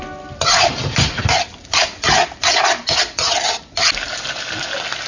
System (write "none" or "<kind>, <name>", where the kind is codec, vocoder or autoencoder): none